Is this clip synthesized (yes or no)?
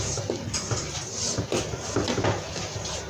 no